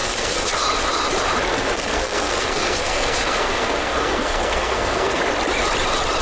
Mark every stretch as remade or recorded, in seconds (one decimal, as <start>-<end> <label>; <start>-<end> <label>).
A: 0.0-0.5 remade; 0.5-1.5 recorded; 1.5-5.2 remade; 5.2-6.2 recorded